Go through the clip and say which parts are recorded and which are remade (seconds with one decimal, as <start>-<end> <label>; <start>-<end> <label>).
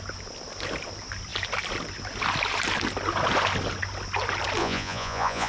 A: 0.0-4.6 recorded; 4.6-5.5 remade